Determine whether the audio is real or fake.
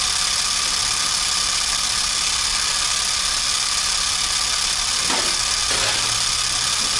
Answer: real